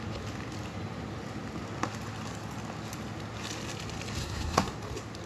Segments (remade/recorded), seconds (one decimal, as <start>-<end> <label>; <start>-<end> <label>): 0.0-4.2 recorded; 4.2-4.7 remade; 4.7-5.3 recorded